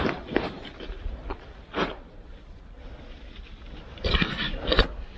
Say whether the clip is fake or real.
real